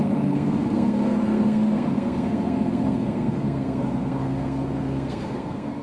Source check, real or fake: fake